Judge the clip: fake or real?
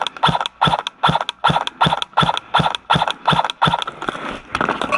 real